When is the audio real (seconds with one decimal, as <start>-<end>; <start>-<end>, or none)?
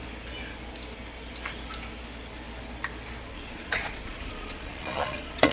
0.0-3.3